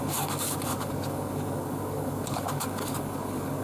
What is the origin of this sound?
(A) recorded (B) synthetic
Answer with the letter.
B